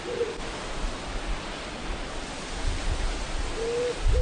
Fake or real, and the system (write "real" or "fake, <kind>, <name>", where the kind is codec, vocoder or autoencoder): real